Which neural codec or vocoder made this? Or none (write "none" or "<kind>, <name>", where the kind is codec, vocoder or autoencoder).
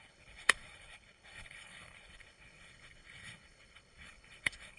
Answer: codec, HILCodec